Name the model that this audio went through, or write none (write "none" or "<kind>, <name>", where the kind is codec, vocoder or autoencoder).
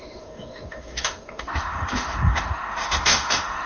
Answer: autoencoder, DAC-VAE